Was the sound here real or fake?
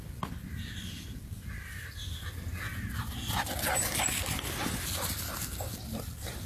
real